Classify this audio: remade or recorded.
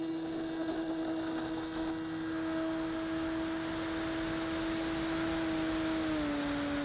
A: recorded